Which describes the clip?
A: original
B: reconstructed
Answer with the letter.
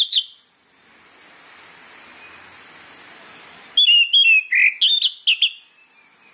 A